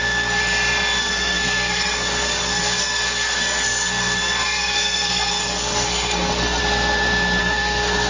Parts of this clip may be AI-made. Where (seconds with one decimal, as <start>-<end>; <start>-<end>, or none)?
0.0-0.4; 1.0-6.6; 7.4-8.1